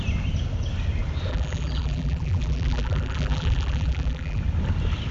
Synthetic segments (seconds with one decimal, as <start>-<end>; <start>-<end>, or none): 1.3-4.4